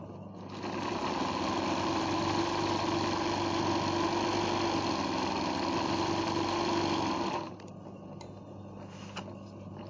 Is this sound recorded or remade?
recorded